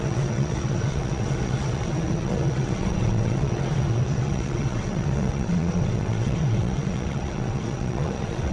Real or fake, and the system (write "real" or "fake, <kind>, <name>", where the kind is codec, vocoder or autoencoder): fake, vocoder, WaveNeXt